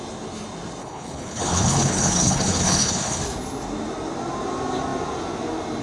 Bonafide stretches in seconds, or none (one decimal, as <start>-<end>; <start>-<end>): 0.0-0.8; 3.2-5.8